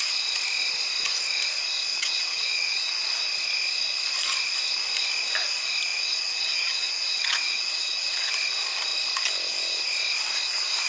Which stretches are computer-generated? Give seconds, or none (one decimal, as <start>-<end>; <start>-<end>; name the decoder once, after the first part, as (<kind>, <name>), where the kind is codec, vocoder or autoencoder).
1.9-3.0 (vocoder, WaveNeXt); 5.9-8.3